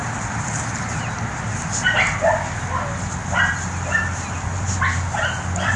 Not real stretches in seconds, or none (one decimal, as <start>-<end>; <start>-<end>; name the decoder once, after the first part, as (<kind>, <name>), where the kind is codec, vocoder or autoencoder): none